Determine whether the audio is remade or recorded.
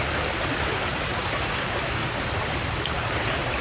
recorded